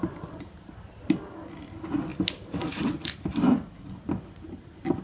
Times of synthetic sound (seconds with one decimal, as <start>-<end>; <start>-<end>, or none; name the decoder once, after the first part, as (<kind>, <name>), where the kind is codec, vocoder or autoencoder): none